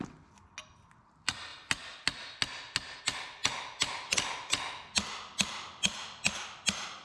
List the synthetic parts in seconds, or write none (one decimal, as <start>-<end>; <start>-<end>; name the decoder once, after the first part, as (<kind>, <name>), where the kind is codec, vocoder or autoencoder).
none

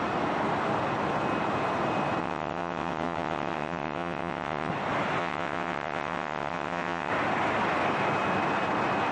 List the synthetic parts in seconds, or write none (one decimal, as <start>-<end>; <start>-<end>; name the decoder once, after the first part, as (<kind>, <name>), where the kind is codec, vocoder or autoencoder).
2.2-4.7 (vocoder, WaveNeXt); 5.2-7.1

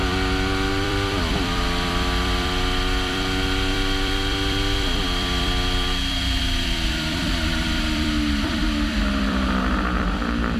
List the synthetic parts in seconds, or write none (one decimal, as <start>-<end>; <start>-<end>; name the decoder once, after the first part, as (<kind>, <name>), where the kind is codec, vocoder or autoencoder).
0.7-10.6 (vocoder, BigVGAN v2)

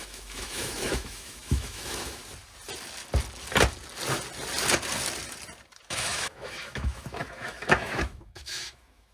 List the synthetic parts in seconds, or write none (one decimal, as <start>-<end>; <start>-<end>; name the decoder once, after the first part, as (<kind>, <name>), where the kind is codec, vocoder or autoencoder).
0.0-2.2 (autoencoder, DAC-VAE); 5.9-9.1

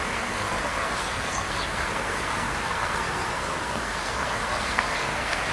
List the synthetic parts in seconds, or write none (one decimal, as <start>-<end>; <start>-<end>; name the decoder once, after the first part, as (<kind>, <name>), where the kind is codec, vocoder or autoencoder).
0.0-5.5 (codec, SNAC)